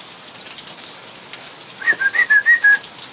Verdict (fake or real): real